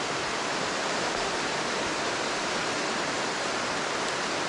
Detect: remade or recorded recorded